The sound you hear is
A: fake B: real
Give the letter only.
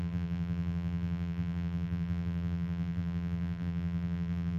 A